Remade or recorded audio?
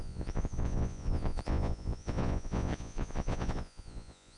remade